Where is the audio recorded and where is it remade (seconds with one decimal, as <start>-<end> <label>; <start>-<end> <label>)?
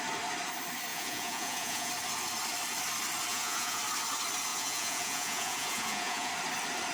0.0-0.9 recorded; 0.9-1.9 remade; 1.9-3.3 recorded; 3.3-3.8 remade; 3.8-4.5 recorded; 4.5-6.3 remade; 6.3-6.9 recorded